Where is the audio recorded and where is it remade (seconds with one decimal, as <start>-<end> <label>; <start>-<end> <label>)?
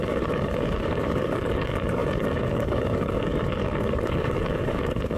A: 0.0-5.2 remade